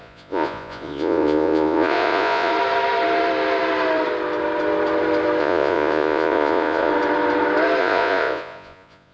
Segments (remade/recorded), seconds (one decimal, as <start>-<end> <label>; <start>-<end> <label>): 0.0-2.5 remade; 2.5-5.4 recorded; 5.4-6.9 remade; 6.9-7.8 recorded; 7.8-9.1 remade